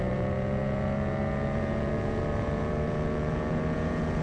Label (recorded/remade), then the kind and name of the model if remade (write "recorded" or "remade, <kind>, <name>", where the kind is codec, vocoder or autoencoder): remade, vocoder, Vocos